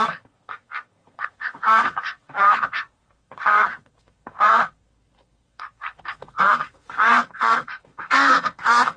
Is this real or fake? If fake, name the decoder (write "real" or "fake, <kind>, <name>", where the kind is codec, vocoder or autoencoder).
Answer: fake, codec, SNAC